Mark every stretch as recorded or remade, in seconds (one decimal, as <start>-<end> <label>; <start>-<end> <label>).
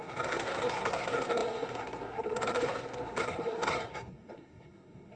0.0-5.2 remade